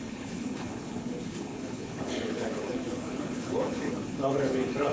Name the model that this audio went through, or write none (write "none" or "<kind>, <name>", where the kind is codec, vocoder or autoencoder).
codec, HILCodec